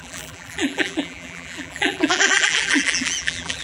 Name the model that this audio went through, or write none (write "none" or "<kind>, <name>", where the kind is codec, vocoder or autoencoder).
vocoder, BigVGAN v2